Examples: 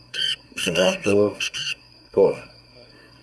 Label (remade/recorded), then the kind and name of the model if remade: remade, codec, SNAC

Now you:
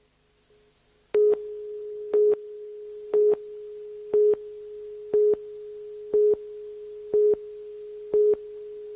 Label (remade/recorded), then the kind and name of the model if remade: recorded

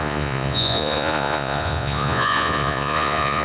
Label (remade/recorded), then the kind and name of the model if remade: remade, vocoder, Vocos